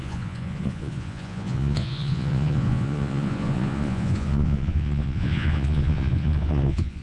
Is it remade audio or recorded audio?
remade